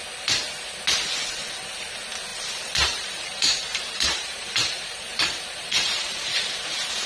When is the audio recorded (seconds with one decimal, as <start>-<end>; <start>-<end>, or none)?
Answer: 0.0-2.3; 6.4-7.1